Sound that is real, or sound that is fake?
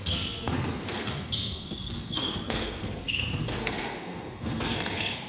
fake